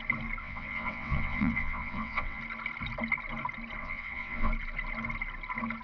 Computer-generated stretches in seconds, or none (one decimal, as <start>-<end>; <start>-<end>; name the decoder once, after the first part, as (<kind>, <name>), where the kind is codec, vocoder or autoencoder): 0.4-2.4 (vocoder, WaveNeXt); 3.8-4.5